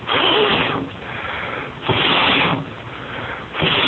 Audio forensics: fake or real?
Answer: real